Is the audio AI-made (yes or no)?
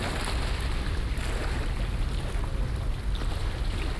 no